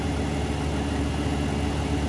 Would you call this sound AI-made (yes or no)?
no